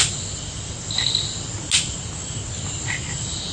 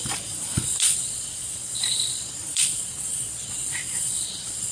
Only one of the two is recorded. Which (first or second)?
first